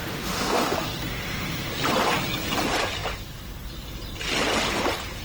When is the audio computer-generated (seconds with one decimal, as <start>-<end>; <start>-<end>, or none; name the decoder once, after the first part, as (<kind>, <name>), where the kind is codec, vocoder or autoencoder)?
0.0-1.7 (autoencoder, DAC-VAE)